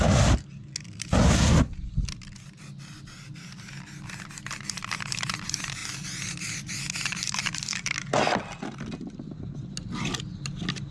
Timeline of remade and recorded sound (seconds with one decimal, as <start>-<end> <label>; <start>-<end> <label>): 0.0-10.9 recorded